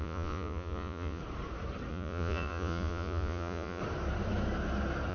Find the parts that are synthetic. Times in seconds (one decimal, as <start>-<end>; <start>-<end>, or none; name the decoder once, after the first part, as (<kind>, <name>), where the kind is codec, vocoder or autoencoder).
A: 0.0-1.2 (vocoder, Vocos); 1.9-3.8